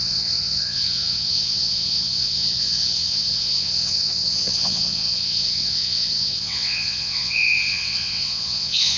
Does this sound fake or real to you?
fake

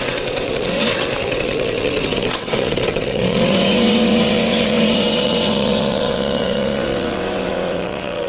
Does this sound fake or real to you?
fake